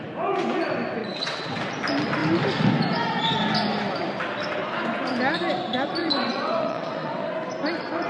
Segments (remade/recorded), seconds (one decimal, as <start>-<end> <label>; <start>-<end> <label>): 0.0-1.0 recorded; 1.0-1.6 remade; 1.6-6.0 recorded; 6.0-7.3 remade; 7.3-8.1 recorded

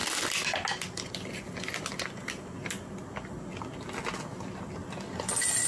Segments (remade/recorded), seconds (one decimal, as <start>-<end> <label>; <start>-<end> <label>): 0.0-5.7 recorded

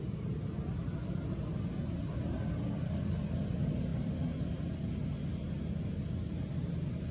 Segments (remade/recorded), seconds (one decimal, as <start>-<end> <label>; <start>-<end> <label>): 0.0-7.1 recorded

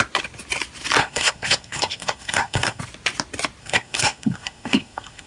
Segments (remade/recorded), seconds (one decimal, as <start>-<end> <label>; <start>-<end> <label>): 0.0-1.0 recorded; 1.0-2.8 remade; 2.8-3.6 recorded; 3.6-5.3 remade

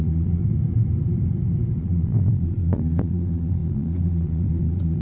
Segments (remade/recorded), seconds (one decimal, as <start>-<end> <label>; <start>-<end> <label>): 0.0-0.4 remade; 0.4-1.8 recorded; 1.8-5.0 remade

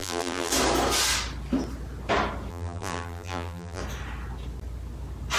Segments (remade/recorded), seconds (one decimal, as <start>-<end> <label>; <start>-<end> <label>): 0.0-0.5 remade; 0.5-2.5 recorded; 2.5-3.8 remade; 3.8-5.4 recorded

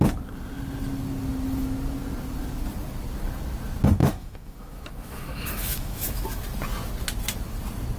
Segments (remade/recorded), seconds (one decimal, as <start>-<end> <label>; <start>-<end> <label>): 0.0-4.0 recorded; 4.0-6.4 remade; 6.4-8.0 recorded